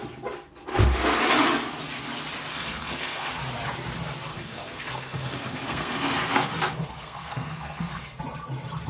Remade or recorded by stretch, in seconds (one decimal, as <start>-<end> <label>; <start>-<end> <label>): 0.0-0.7 recorded; 0.7-1.2 remade; 1.2-2.5 recorded; 2.5-3.3 remade; 3.3-4.3 recorded; 4.3-8.2 remade; 8.2-8.9 recorded